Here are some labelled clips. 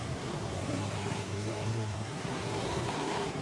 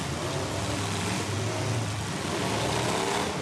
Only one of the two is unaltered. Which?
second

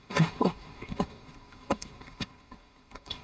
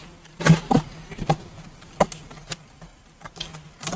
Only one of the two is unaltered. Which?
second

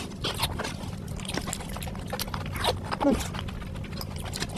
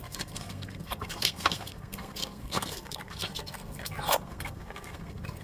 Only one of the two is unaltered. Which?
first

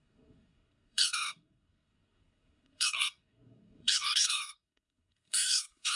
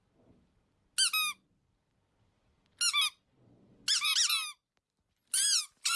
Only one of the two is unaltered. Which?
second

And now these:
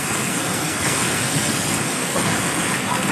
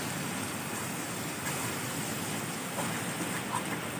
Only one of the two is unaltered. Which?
second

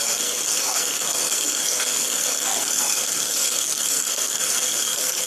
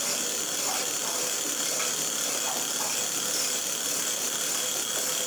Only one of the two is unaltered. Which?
second